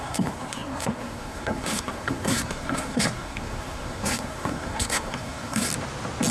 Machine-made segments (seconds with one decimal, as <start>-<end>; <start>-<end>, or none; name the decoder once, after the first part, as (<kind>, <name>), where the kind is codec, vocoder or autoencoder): 0.0-5.7 (codec, SNAC)